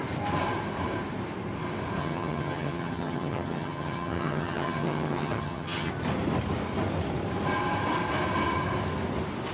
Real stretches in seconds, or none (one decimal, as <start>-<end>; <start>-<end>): 0.0-2.0; 5.9-9.5